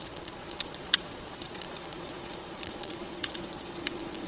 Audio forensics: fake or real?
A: fake